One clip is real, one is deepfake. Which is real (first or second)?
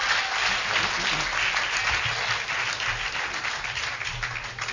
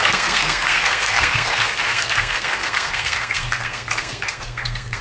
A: first